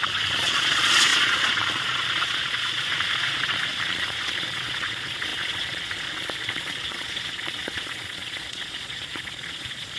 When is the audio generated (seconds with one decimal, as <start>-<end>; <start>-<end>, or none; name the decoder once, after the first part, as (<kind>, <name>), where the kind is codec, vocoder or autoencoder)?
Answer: 0.0-10.0 (vocoder, Vocos)